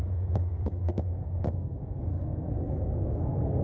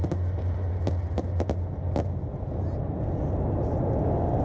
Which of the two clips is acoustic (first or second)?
second